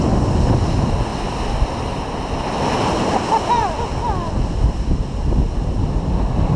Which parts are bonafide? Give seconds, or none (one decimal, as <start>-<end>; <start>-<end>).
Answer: 0.0-6.6